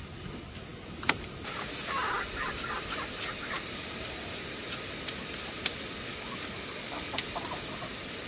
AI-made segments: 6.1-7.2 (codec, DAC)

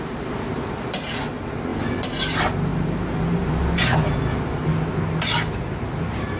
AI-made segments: none